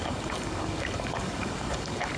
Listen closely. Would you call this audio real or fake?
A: fake